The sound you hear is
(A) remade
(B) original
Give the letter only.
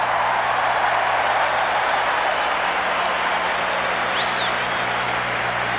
B